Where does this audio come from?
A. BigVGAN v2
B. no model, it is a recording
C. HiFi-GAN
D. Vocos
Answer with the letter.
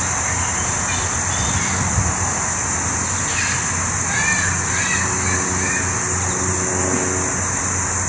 B